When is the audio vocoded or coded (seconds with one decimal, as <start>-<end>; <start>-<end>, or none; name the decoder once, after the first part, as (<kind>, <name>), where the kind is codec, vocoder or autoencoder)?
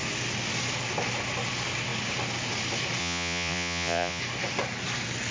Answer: 3.0-4.2 (vocoder, Vocos)